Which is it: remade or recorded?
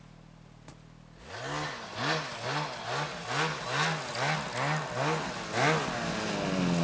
recorded